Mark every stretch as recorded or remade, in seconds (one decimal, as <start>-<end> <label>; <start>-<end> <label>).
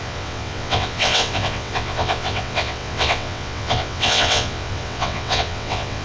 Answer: 0.0-6.0 remade